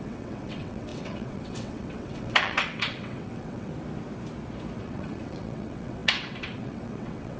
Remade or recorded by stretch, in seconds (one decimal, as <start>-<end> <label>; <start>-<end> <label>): 0.0-3.7 remade; 3.7-4.8 recorded; 4.8-7.4 remade